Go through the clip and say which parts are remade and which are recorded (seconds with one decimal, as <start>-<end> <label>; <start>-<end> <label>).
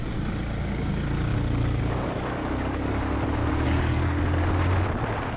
0.0-1.3 recorded; 1.3-3.0 remade; 3.0-3.4 recorded; 3.4-4.5 remade; 4.5-5.4 recorded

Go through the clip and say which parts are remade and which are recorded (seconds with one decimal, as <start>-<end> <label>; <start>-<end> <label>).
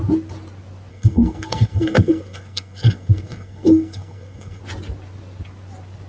0.0-0.9 recorded; 0.9-4.6 remade; 4.6-6.1 recorded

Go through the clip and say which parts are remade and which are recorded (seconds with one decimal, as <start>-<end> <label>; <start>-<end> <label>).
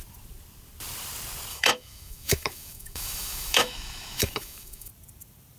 0.0-1.5 recorded; 1.5-4.9 remade; 4.9-5.6 recorded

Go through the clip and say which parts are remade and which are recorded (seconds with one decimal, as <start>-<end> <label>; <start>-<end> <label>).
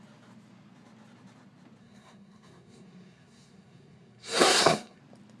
0.0-1.8 recorded; 1.8-5.0 remade; 5.0-5.4 recorded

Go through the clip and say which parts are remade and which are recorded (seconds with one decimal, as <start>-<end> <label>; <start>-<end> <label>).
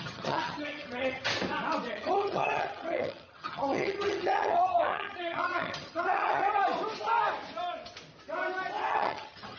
0.0-1.3 remade; 1.3-1.9 recorded; 1.9-6.6 remade; 6.6-8.9 recorded; 8.9-9.6 remade